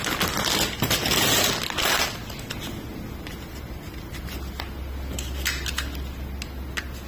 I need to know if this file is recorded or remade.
recorded